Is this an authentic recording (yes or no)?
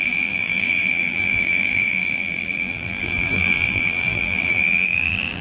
no